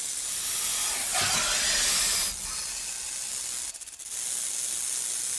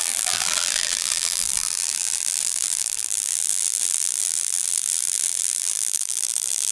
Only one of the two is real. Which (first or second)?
first